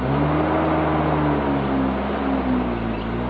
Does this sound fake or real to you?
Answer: real